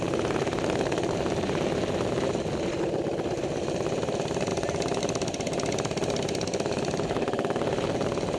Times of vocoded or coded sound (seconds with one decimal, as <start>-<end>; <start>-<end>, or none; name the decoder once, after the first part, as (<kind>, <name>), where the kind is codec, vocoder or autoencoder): none

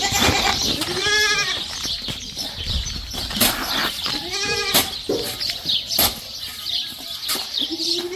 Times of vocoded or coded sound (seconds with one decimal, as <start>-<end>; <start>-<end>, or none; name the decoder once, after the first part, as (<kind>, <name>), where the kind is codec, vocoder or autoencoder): none